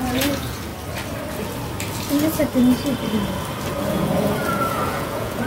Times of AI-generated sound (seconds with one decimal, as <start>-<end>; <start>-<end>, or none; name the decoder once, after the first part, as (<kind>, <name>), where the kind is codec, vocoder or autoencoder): 0.0-0.7 (vocoder, Vocos); 3.9-5.5